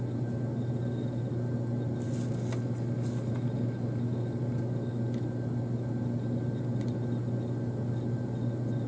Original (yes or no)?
yes